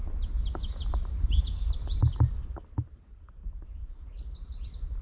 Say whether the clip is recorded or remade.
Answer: recorded